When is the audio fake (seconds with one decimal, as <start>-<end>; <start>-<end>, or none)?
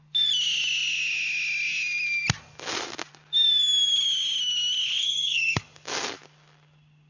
5.0-5.6